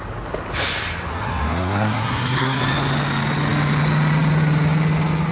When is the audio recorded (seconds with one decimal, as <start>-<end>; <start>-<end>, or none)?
0.0-1.1; 2.6-5.3